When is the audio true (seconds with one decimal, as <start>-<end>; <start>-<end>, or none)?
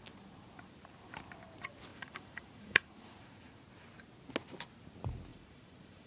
0.0-1.9; 3.6-5.3